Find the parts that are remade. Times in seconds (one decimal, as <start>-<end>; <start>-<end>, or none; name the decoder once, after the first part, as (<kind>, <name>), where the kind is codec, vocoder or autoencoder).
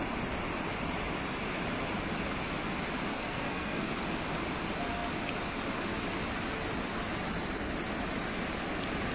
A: 3.1-3.9 (codec, SNAC)